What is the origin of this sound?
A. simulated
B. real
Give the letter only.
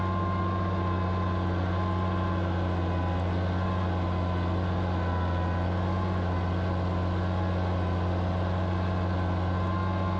B